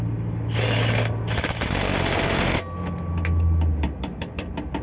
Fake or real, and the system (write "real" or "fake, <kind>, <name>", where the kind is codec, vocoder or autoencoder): real